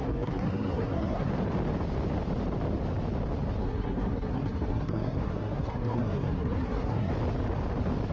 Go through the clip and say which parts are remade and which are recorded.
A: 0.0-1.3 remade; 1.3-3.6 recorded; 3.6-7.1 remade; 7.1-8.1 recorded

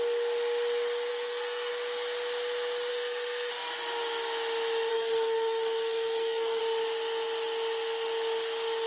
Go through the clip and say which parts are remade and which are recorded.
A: 0.0-1.1 recorded; 1.1-1.7 remade; 1.7-2.9 recorded; 2.9-3.5 remade; 3.5-4.9 recorded; 4.9-6.6 remade; 6.6-8.9 recorded

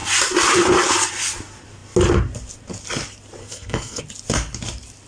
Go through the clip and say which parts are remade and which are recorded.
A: 0.0-3.4 recorded; 3.4-4.0 remade; 4.0-5.1 recorded

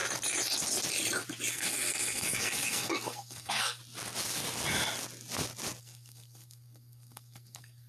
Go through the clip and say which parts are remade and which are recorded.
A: 0.0-1.5 recorded; 1.5-3.8 remade; 3.8-5.8 recorded; 5.8-7.9 remade

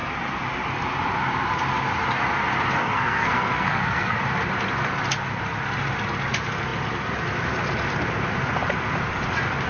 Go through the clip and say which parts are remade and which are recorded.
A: 0.0-2.8 recorded; 2.8-4.2 remade; 4.2-9.7 recorded